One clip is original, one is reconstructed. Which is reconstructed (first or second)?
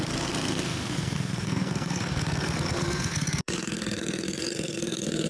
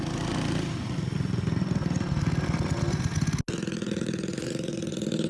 first